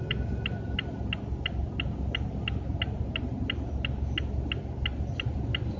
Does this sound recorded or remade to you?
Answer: recorded